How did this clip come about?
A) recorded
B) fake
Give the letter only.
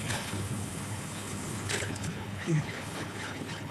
B